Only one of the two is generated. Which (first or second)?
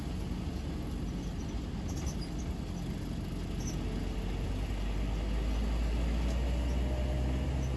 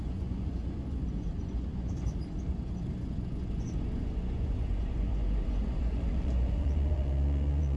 second